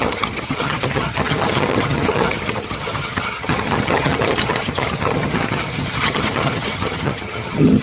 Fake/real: fake